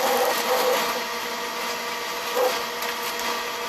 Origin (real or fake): real